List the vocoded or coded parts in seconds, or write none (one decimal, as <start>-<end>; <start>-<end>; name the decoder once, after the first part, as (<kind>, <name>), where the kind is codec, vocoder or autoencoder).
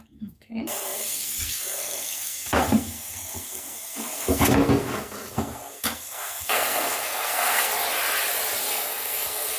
0.0-7.7 (codec, SNAC); 8.6-9.6